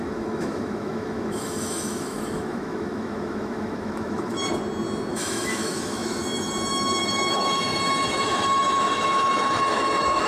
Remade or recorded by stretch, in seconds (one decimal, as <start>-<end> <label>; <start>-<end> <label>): 0.0-4.4 remade; 4.4-5.1 recorded; 5.1-10.3 remade